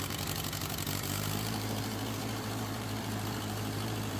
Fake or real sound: fake